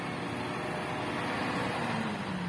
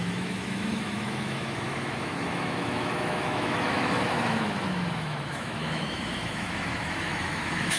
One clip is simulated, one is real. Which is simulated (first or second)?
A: second